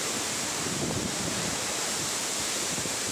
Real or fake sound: fake